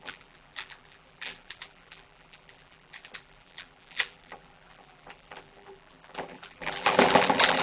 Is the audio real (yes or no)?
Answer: no